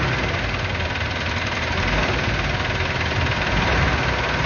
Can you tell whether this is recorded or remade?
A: recorded